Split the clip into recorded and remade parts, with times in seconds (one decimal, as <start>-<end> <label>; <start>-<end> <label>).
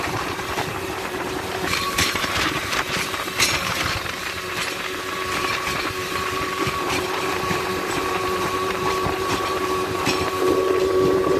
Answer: 0.0-11.4 remade